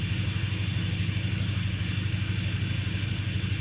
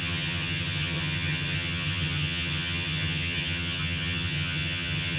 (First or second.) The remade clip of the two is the second